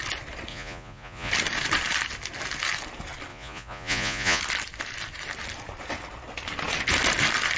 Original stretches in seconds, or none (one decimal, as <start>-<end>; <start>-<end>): 0.0-0.5; 1.3-3.3; 4.4-7.6